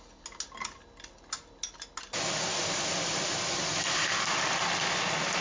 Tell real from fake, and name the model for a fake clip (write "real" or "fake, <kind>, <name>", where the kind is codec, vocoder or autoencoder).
real